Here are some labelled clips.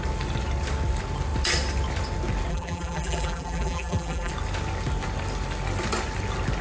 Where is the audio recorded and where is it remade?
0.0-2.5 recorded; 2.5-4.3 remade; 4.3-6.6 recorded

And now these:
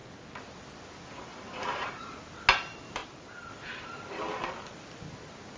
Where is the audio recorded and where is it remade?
0.0-1.3 recorded; 1.3-2.0 remade; 2.0-5.6 recorded

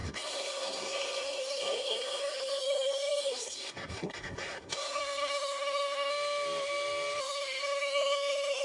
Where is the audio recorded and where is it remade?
0.0-6.1 remade; 6.1-7.2 recorded; 7.2-8.6 remade

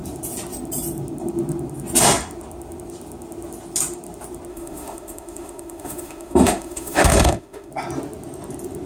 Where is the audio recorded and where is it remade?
0.0-4.5 recorded; 4.5-7.7 remade; 7.7-8.9 recorded